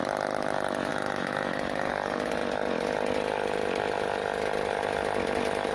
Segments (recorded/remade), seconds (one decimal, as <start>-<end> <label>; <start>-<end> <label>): 0.0-0.9 recorded; 0.9-1.9 remade; 1.9-5.7 recorded